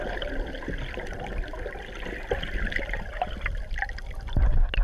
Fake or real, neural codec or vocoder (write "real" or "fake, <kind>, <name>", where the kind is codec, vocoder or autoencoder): real